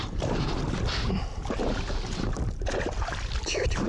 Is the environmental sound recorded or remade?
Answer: recorded